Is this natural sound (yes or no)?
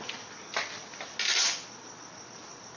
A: yes